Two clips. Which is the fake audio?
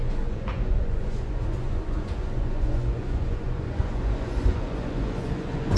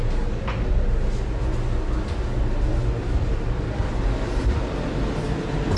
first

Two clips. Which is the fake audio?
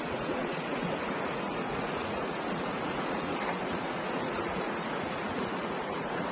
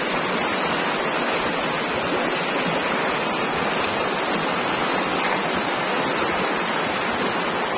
first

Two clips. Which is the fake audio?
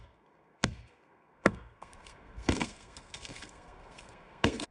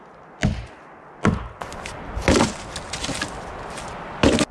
first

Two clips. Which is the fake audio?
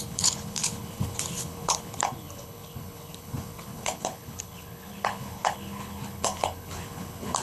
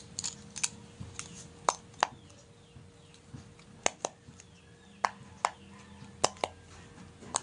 first